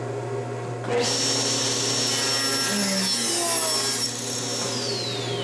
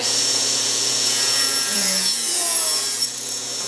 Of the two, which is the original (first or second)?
first